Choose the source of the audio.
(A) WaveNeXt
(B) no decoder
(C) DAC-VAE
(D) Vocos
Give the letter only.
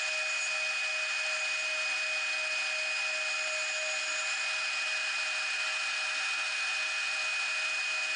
B